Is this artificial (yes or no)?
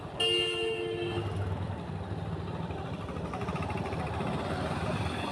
no